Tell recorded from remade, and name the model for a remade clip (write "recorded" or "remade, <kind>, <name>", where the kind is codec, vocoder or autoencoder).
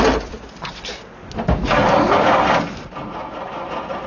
recorded